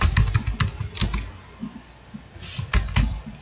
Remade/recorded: recorded